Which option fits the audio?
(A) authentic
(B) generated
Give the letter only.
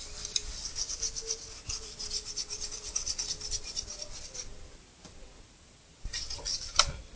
A